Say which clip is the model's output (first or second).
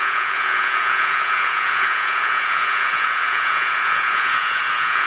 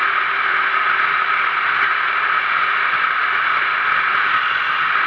first